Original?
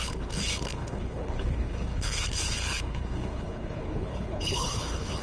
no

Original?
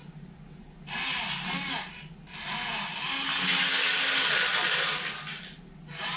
yes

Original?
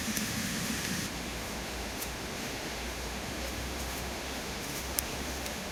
no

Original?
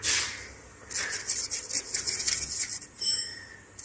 yes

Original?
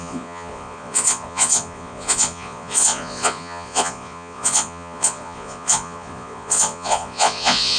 no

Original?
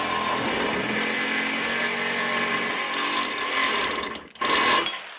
yes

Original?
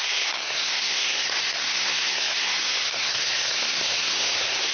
no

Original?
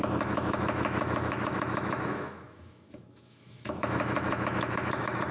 no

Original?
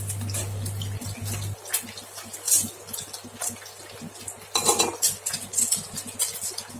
yes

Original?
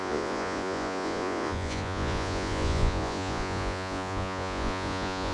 no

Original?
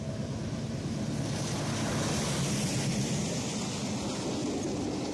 yes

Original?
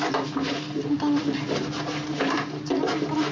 yes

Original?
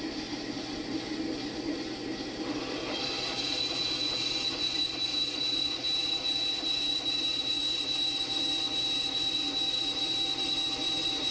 yes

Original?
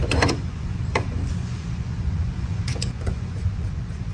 no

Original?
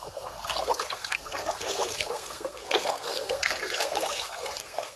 no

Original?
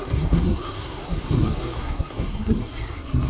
no